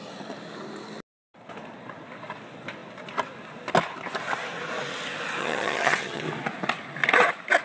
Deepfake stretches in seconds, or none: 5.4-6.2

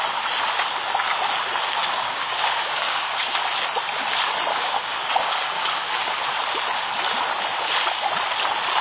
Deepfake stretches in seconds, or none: 1.8-3.4; 4.5-6.1

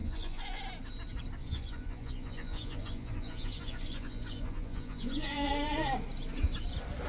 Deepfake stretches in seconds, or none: 0.0-0.6; 1.4-5.5

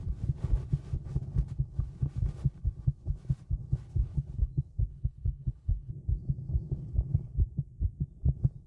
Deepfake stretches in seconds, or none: 3.9-4.5; 4.9-5.9

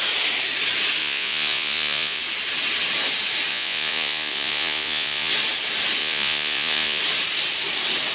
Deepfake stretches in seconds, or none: 1.0-2.2; 3.5-5.3; 6.0-7.0